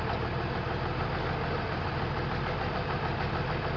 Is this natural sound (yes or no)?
yes